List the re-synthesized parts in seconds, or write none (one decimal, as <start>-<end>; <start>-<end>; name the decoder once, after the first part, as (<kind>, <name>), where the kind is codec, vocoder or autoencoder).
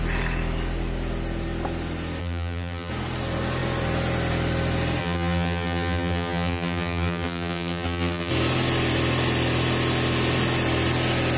2.2-2.9 (vocoder, BigVGAN v2); 5.0-8.3